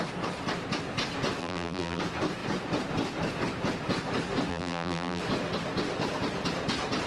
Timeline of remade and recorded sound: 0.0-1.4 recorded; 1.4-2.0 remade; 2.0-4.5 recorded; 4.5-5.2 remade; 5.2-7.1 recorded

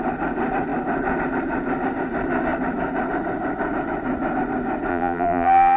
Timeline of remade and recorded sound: 0.0-4.9 recorded; 4.9-5.8 remade

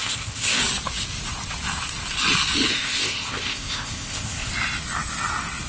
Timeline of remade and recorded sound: 0.0-0.6 remade; 0.6-2.7 recorded; 2.7-4.5 remade; 4.5-5.7 recorded

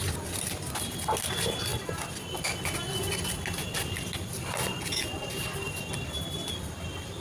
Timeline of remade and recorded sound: 0.0-7.2 recorded

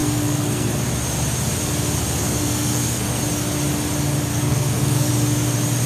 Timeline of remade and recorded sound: 0.0-0.7 remade; 0.7-2.2 recorded; 2.2-3.2 remade; 3.2-4.3 recorded; 4.3-5.1 remade; 5.1-5.9 recorded

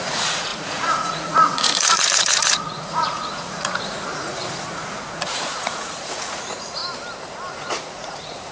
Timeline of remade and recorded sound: 0.0-6.8 remade; 6.8-7.5 recorded; 7.5-8.5 remade

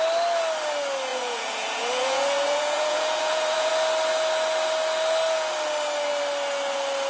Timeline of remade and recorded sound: 0.0-1.1 recorded; 1.1-3.7 remade; 3.7-7.1 recorded

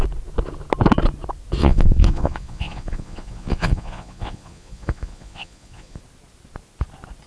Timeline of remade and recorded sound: 0.0-1.6 recorded; 1.6-6.0 remade; 6.0-7.3 recorded